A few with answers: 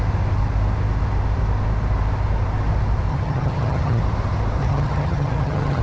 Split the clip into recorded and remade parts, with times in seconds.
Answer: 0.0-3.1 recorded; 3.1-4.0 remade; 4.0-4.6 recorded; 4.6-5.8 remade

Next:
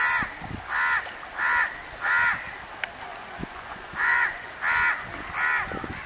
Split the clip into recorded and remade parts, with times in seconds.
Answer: 0.0-3.1 recorded; 3.1-4.5 remade; 4.5-6.1 recorded

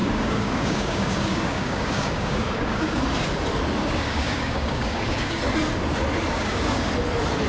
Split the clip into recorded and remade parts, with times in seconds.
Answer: 0.0-3.0 remade; 3.0-3.8 recorded; 3.8-5.4 remade; 5.4-6.3 recorded; 6.3-6.9 remade; 6.9-7.5 recorded

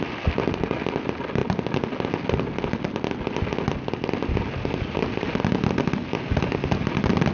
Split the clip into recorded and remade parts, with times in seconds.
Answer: 0.0-7.3 recorded

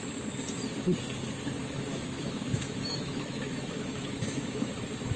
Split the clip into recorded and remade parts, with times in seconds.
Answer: 0.0-1.6 recorded; 1.6-4.7 remade; 4.7-5.2 recorded

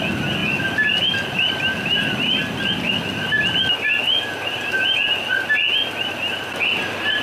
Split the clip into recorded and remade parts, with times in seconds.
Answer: 0.0-7.2 recorded

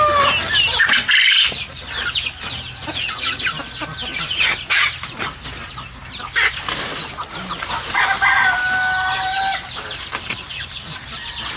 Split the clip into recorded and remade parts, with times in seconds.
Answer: 0.0-2.8 recorded; 2.8-3.4 remade; 3.4-11.6 recorded